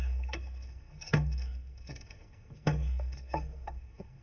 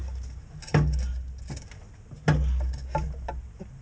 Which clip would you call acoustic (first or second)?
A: second